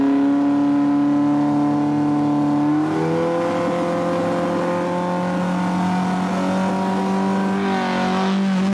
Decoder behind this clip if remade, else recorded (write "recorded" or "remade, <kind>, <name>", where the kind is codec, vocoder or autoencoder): recorded